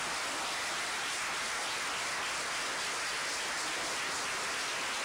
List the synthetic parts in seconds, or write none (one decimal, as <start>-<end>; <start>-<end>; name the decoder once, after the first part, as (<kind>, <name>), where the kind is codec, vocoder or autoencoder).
none